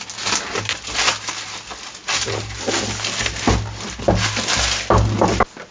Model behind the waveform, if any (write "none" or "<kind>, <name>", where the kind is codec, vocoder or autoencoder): none